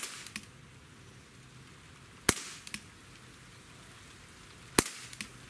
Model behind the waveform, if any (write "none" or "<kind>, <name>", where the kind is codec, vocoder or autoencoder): none